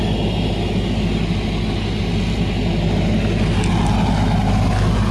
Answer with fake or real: real